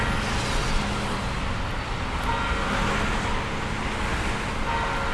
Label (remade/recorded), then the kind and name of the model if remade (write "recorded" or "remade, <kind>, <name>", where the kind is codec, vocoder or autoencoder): recorded